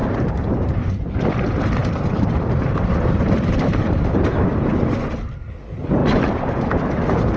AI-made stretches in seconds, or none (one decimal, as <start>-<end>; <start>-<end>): 0.0-0.9; 1.8-4.5; 6.0-6.7